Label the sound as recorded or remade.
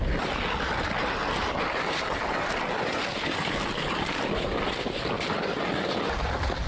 recorded